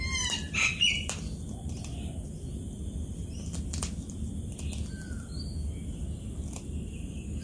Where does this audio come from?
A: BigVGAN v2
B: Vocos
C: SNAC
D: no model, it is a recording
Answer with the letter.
D